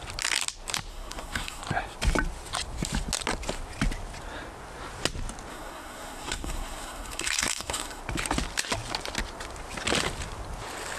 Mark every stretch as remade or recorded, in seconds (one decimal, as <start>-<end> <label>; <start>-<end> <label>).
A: 0.0-0.9 recorded; 0.9-1.6 remade; 1.6-5.5 recorded; 5.5-8.0 remade; 8.0-11.0 recorded